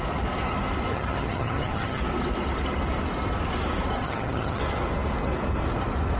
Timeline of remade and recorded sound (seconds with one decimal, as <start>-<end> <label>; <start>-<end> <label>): 0.0-0.9 recorded; 0.9-2.0 remade; 2.0-4.0 recorded; 4.0-4.6 remade; 4.6-6.2 recorded